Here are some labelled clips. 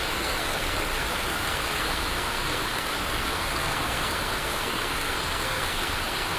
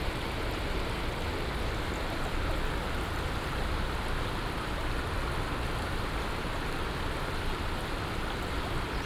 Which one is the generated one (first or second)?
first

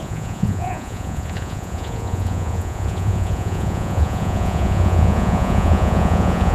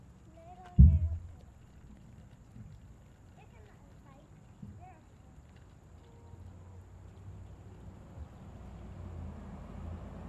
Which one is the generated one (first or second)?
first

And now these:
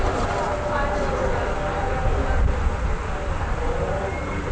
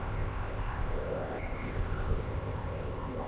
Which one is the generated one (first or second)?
second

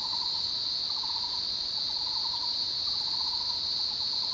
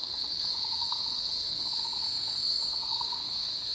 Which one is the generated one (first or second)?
second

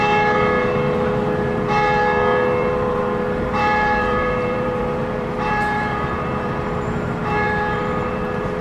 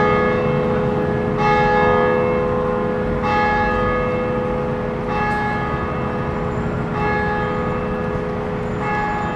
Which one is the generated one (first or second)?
first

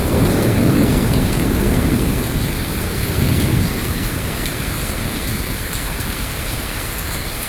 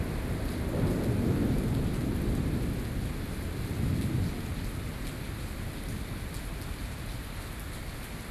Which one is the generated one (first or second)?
first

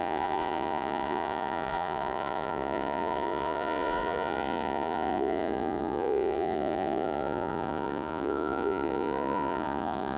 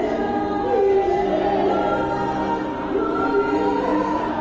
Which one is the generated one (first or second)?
first